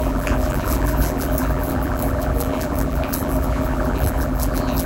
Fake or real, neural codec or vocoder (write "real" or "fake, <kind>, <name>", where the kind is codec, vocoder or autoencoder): fake, vocoder, BigVGAN v2